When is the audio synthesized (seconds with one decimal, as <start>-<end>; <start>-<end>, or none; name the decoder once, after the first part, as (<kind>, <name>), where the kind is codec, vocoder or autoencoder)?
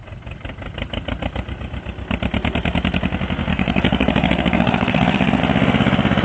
3.5-5.4 (codec, SNAC)